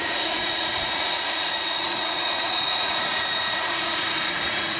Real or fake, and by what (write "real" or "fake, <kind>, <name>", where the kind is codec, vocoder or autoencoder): fake, vocoder, Vocos